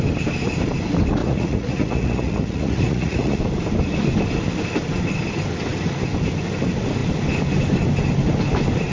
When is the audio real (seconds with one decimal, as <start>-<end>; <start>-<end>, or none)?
0.0-1.2; 3.4-8.9